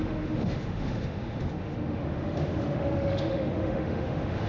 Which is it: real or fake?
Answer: fake